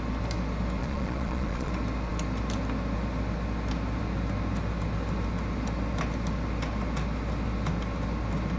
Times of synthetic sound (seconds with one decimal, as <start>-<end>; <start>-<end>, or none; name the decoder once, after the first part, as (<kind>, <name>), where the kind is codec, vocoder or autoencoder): 0.8-1.7 (vocoder, Vocos)